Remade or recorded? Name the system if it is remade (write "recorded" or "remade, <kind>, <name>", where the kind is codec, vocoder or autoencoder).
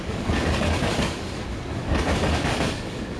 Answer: remade, codec, DAC